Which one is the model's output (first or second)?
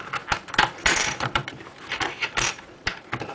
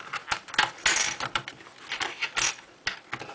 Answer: first